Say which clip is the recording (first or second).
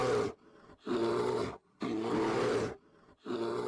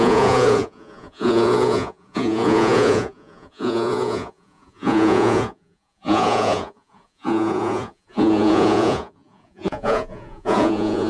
first